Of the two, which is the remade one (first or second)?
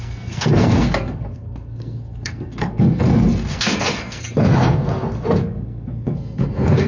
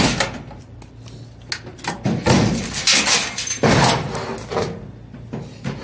first